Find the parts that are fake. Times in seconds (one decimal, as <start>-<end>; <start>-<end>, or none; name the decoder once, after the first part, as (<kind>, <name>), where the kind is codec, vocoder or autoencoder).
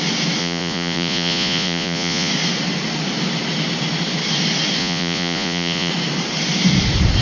0.4-2.3 (vocoder, Vocos); 4.8-5.9